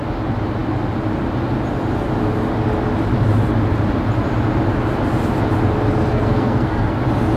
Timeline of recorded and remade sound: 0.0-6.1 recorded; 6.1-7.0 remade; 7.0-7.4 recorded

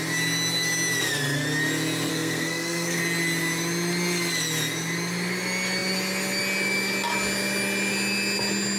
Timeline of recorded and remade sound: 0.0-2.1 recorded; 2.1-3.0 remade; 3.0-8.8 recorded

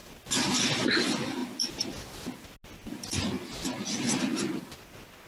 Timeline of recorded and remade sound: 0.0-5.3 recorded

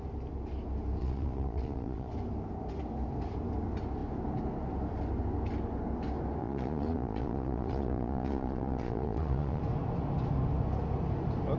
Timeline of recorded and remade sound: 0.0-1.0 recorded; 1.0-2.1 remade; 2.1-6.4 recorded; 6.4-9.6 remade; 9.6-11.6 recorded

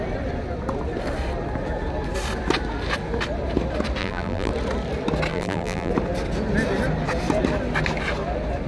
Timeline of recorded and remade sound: 0.0-4.0 recorded; 4.0-4.5 remade; 4.5-5.3 recorded; 5.3-5.9 remade; 5.9-8.7 recorded